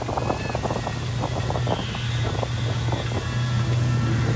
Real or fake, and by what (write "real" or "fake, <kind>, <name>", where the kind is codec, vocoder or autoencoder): real